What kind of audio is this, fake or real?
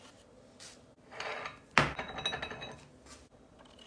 real